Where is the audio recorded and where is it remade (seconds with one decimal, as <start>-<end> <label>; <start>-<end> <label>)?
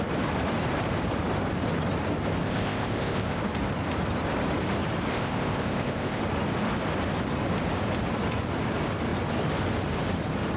0.0-2.4 recorded; 2.4-3.4 remade; 3.4-5.1 recorded; 5.1-6.2 remade; 6.2-10.6 recorded